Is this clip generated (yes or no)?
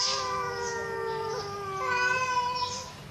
no